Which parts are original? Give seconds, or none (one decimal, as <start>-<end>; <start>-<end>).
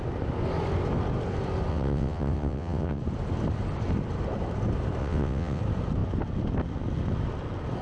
0.0-1.7; 3.0-5.0; 5.6-7.8